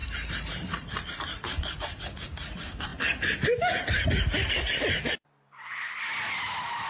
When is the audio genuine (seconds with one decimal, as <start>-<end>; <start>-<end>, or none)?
2.9-4.5